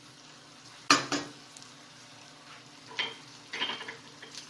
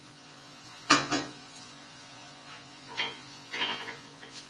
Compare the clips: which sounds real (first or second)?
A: first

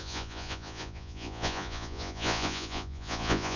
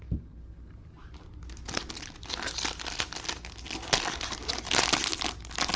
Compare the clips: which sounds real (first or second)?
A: second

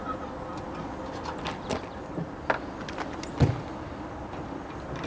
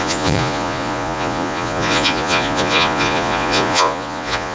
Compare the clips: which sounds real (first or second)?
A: first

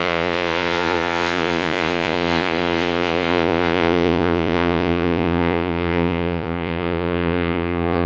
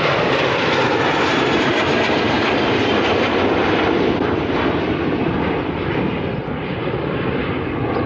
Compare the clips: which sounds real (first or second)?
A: second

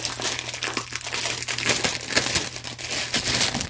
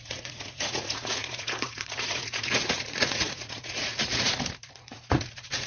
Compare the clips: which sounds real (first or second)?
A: first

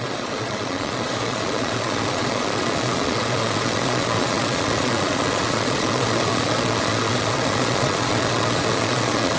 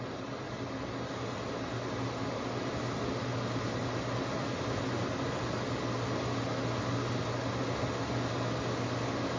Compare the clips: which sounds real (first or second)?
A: second